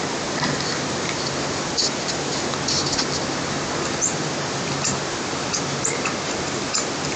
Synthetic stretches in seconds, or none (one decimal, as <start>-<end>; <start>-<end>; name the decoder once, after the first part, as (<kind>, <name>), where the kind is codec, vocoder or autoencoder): 0.7-2.5 (vocoder, BigVGAN v2)